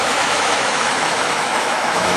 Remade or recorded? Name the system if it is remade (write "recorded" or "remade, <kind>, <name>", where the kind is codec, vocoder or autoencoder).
remade, autoencoder, DAC-VAE